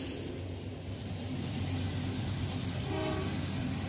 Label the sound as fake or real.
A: real